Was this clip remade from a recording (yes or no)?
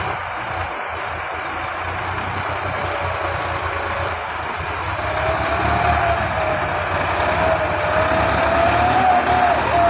no